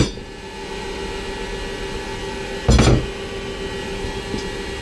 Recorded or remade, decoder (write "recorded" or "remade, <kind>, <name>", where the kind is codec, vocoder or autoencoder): recorded